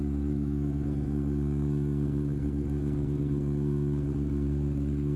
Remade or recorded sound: remade